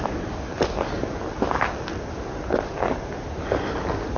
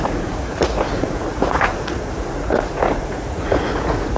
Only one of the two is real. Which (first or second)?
first